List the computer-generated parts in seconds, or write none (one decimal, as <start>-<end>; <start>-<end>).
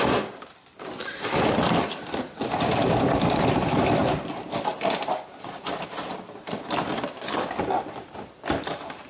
0.0-9.1